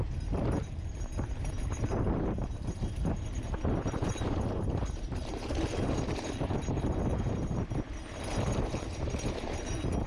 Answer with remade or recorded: remade